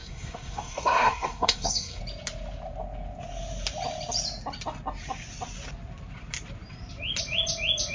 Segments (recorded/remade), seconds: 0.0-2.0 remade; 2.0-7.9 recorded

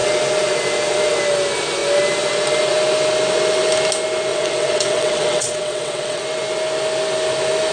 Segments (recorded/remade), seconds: 0.0-4.3 recorded; 4.3-6.2 remade; 6.2-7.7 recorded